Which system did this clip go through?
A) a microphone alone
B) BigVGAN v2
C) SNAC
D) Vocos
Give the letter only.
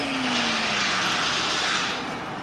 A